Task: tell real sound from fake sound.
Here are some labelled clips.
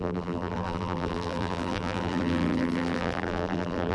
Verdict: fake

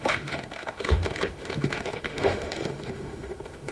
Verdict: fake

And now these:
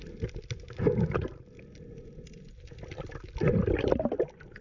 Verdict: real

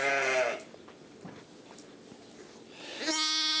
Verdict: real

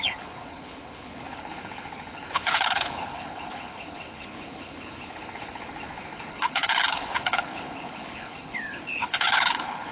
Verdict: fake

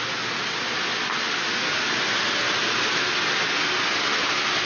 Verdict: real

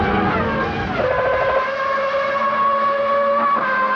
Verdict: real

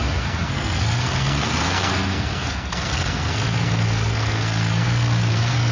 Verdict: fake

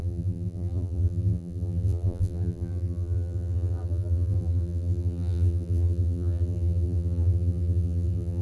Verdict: fake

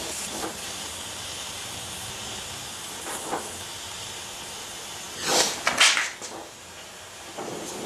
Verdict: real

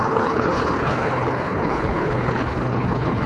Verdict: fake